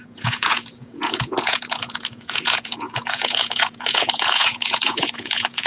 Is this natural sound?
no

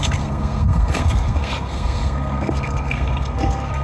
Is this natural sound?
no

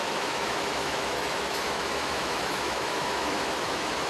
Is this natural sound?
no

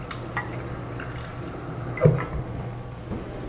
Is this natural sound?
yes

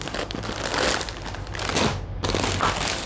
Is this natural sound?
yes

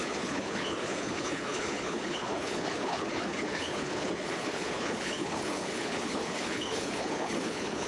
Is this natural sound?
no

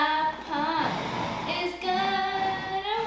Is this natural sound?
yes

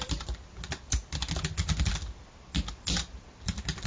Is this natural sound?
yes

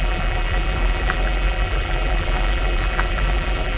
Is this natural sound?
no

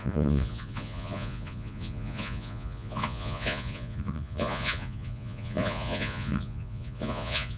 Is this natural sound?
no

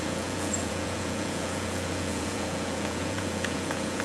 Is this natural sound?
no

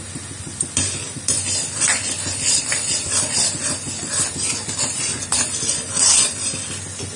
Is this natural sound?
no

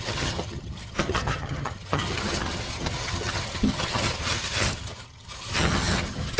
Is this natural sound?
no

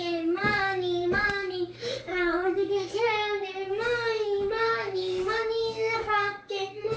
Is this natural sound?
no